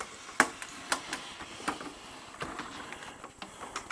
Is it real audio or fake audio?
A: real